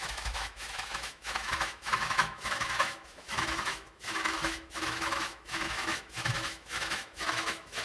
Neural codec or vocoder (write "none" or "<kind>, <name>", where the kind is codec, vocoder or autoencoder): autoencoder, DAC-VAE